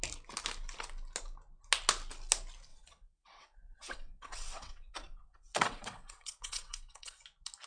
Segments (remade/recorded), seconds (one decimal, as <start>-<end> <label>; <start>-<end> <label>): 0.0-2.7 recorded; 2.7-7.2 remade; 7.2-7.7 recorded